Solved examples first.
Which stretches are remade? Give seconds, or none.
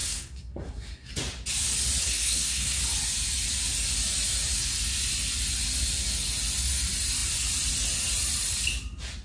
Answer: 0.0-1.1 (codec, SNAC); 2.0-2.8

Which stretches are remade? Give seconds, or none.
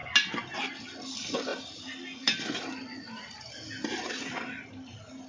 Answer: none